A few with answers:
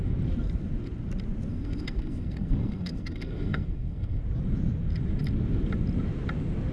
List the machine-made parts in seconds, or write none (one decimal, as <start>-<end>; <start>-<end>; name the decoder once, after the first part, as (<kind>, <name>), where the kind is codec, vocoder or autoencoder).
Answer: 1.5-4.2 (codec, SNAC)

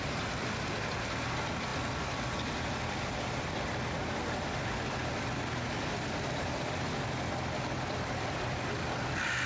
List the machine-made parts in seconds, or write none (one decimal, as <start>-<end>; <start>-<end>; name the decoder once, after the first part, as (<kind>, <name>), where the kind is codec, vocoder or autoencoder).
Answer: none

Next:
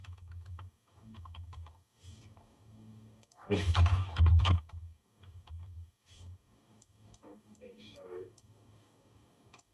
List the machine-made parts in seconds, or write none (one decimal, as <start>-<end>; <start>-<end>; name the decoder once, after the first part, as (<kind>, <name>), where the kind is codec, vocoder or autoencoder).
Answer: 0.0-9.7 (codec, DAC)

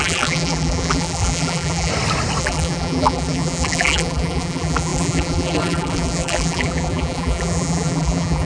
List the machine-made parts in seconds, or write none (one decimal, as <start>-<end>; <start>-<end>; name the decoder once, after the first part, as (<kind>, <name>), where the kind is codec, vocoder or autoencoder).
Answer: 0.0-1.9 (vocoder, BigVGAN v2); 2.4-8.5